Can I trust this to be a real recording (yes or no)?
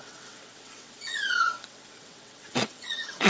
no